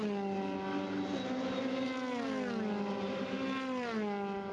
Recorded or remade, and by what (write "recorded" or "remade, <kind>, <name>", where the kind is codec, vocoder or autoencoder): recorded